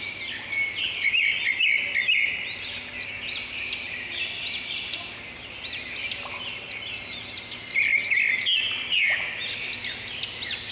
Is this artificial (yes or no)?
no